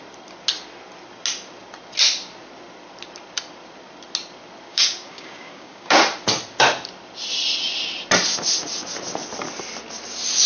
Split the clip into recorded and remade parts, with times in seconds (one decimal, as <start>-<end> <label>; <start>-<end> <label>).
0.0-4.7 recorded; 4.7-6.0 remade; 6.0-10.5 recorded